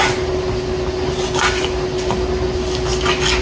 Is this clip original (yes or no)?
yes